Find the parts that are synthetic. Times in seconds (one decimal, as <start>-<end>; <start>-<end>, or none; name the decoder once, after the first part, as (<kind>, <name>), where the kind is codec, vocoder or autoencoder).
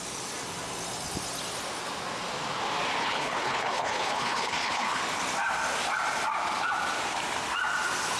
3.0-5.0 (codec, HILCodec)